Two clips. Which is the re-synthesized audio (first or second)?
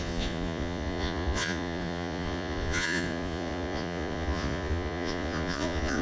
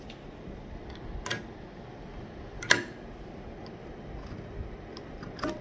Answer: first